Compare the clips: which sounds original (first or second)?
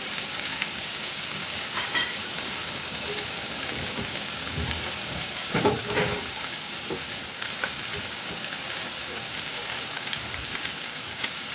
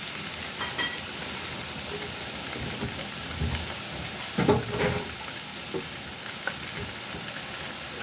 second